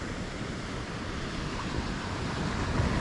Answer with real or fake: real